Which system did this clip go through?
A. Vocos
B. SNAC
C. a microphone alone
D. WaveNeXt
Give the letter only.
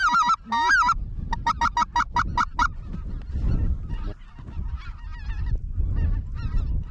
C